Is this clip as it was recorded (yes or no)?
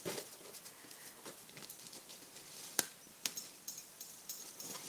yes